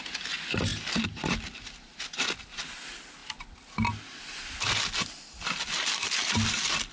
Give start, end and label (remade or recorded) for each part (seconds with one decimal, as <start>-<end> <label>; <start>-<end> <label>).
0.0-6.9 recorded